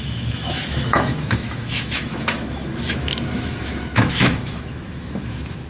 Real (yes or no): no